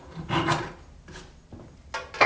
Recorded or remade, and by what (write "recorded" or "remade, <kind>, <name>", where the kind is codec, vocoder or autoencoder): recorded